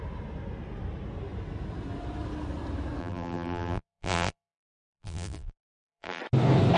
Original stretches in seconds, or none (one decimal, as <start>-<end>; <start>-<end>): 0.0-3.0; 6.2-6.8